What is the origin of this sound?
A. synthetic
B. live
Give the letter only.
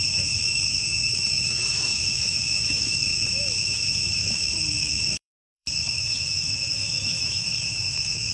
A